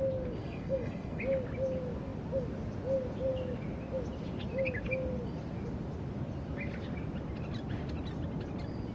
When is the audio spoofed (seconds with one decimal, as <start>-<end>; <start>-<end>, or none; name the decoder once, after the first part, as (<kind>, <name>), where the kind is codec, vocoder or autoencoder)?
0.4-1.2 (codec, SNAC)